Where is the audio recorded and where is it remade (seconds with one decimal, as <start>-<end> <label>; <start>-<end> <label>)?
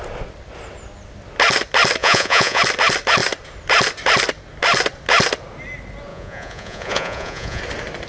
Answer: 0.0-2.0 recorded; 2.0-2.6 remade; 2.6-6.1 recorded; 6.1-7.6 remade; 7.6-8.1 recorded